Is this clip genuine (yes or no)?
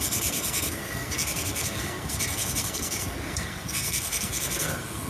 no